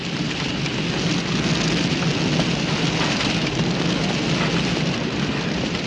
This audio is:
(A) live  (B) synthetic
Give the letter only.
A